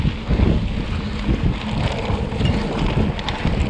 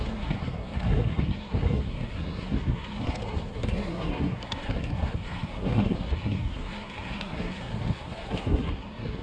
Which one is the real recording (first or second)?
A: first